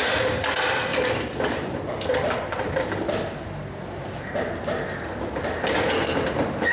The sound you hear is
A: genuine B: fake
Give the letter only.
A